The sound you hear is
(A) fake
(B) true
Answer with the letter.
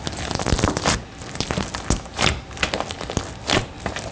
B